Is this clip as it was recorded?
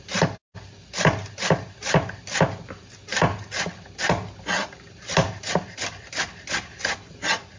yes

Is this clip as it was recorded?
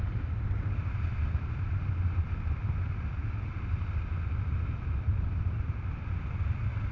yes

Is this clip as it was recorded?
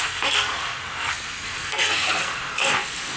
no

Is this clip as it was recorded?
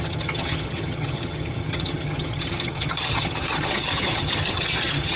no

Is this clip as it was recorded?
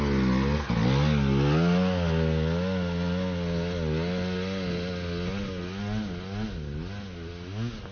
yes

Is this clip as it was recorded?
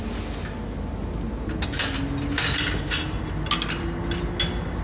yes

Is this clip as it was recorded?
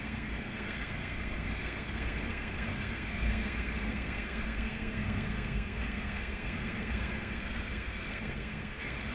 no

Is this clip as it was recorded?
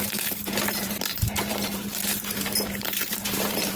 no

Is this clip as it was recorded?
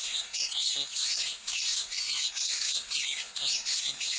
no